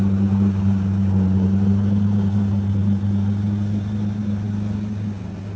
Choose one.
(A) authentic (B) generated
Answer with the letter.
A